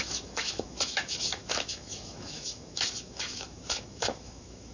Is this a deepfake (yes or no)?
yes